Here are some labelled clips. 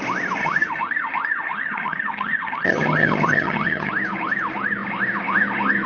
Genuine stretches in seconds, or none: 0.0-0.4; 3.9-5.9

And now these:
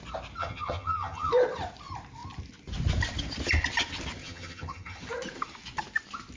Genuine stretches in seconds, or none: 0.0-0.4; 1.3-4.2; 5.0-6.4

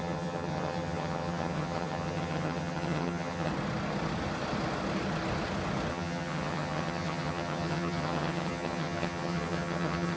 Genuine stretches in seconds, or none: 3.5-5.9

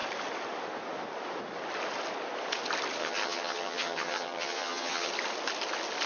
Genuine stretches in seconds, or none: 0.0-3.0; 5.1-6.1